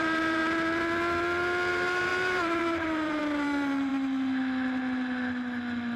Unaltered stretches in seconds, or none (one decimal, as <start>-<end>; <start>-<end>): 0.4-1.7; 3.9-6.0